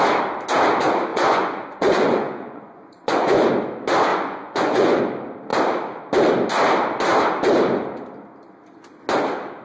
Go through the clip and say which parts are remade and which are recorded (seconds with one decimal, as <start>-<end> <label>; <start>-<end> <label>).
0.0-1.1 recorded; 1.1-3.5 remade; 3.5-4.1 recorded; 4.1-5.0 remade; 5.0-9.6 recorded